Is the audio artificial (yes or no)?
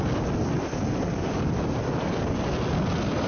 no